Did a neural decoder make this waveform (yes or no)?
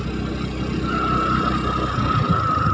no